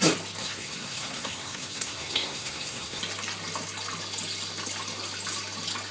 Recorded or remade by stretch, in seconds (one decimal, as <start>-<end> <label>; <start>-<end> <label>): 0.0-0.4 recorded; 0.4-3.0 remade; 3.0-5.9 recorded